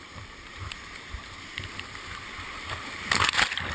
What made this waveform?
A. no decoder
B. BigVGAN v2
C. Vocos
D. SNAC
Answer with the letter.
B